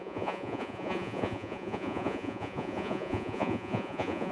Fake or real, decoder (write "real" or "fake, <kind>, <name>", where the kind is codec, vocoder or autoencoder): fake, vocoder, Vocos